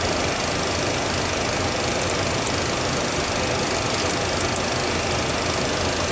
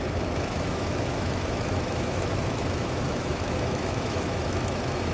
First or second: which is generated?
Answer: second